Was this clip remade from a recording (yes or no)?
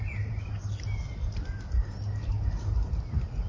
no